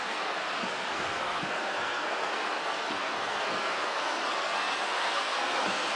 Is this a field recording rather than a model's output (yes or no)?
no